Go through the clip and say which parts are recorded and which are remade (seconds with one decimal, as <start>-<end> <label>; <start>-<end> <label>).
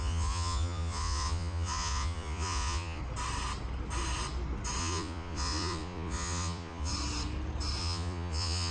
0.0-3.0 remade; 3.0-4.8 recorded; 4.8-6.9 remade; 6.9-7.8 recorded; 7.8-8.7 remade